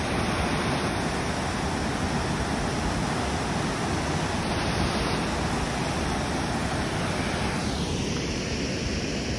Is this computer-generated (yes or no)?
no